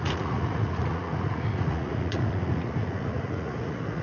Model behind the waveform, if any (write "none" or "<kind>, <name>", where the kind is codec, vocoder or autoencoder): vocoder, Vocos